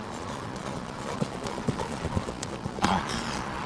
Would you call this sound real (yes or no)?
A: no